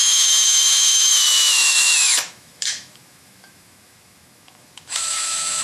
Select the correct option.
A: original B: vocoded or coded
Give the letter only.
B